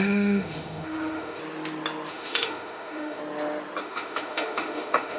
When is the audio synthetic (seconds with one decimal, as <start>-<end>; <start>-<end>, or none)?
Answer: 0.0-1.4; 2.1-3.2; 3.8-5.2